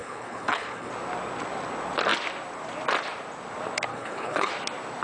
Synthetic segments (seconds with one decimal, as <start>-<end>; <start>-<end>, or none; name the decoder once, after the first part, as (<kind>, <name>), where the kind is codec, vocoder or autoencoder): 0.0-0.9 (codec, HILCodec); 3.9-4.5